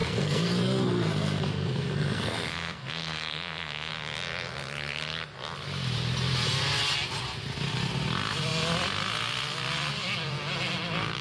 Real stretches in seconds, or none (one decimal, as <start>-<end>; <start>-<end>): 3.9-11.2